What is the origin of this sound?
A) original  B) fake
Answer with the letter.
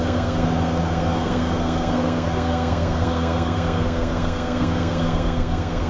B